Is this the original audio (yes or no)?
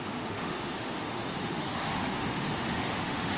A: no